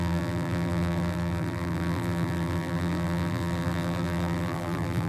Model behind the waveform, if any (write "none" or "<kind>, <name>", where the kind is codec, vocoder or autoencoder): vocoder, BigVGAN v2